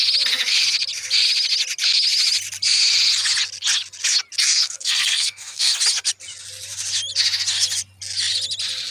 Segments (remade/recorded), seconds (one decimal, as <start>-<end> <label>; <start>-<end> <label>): 0.0-4.4 recorded; 4.4-5.7 remade; 5.7-8.9 recorded